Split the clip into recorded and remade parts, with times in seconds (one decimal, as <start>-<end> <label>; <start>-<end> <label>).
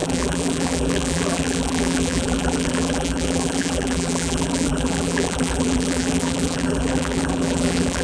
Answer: 0.0-8.0 remade